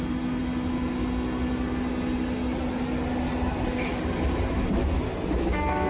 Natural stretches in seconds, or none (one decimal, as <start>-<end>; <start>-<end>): 0.0-5.9